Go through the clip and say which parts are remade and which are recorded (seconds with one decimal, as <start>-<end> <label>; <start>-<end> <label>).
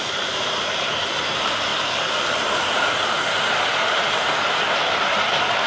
0.0-5.7 remade